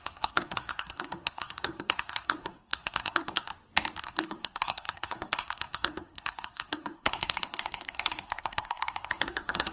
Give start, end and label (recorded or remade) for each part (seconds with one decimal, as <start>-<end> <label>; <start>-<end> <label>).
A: 0.0-3.5 remade; 3.5-4.0 recorded; 4.0-9.7 remade